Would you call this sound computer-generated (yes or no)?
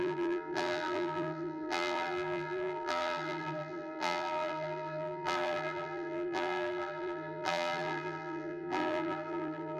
yes